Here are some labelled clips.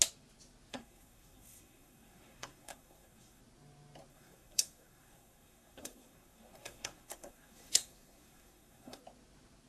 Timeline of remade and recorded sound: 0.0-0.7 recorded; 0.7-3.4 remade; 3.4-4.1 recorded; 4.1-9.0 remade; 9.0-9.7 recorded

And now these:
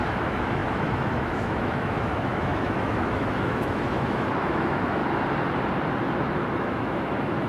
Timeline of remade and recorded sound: 0.0-5.0 remade; 5.0-6.6 recorded; 6.6-7.5 remade

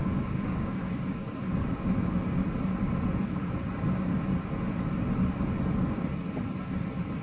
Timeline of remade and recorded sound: 0.0-2.1 remade; 2.1-7.2 recorded

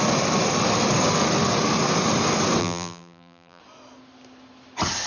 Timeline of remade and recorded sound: 0.0-2.6 recorded; 2.6-3.6 remade; 3.6-5.1 recorded

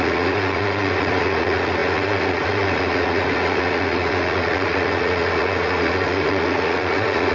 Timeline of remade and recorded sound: 0.0-7.3 remade